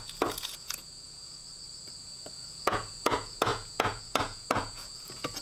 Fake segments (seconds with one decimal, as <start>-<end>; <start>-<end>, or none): 0.0-1.4; 2.0-5.4